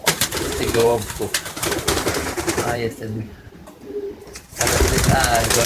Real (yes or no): no